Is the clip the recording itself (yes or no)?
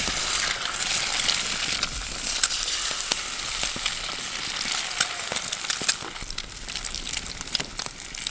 yes